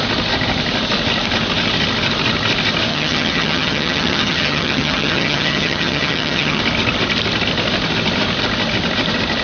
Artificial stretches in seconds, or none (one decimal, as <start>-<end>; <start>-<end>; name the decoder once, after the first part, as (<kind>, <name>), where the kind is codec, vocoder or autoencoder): 2.9-6.6 (vocoder, HiFi-GAN)